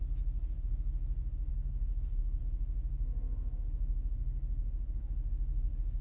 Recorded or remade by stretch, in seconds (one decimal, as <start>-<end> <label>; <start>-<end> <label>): 0.0-1.5 recorded; 1.5-2.4 remade; 2.4-6.0 recorded